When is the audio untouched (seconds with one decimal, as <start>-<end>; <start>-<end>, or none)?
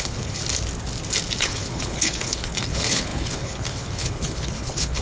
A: 0.4-1.4